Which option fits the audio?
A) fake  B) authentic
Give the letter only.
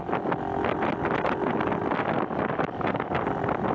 B